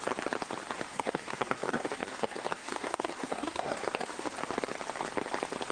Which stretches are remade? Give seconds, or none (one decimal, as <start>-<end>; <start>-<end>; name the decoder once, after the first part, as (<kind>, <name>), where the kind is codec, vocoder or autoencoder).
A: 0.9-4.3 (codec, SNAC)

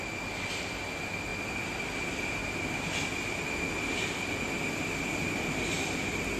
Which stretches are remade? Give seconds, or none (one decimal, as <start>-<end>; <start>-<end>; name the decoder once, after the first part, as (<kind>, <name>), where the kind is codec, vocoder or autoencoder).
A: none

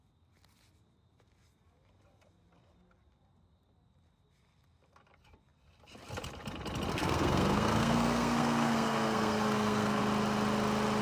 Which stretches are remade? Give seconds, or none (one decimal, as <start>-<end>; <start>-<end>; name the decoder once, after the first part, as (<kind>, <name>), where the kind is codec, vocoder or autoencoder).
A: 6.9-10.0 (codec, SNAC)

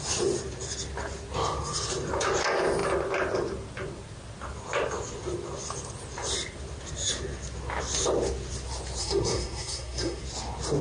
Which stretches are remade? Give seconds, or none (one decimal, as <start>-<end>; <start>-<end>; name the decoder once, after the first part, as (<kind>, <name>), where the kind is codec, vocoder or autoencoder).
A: 9.0-10.2 (codec, SNAC)